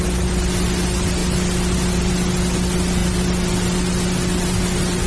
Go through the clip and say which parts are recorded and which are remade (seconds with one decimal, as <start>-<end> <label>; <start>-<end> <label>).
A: 0.0-5.1 recorded